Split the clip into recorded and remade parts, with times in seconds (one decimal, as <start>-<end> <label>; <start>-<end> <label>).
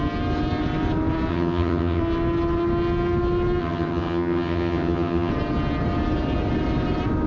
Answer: 0.0-1.3 recorded; 1.3-2.0 remade; 2.0-3.6 recorded; 3.6-5.3 remade; 5.3-7.3 recorded